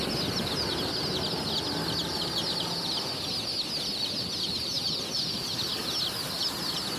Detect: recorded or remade recorded